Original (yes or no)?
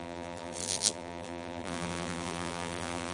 no